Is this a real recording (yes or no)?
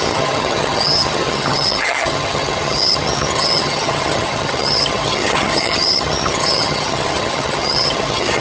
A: no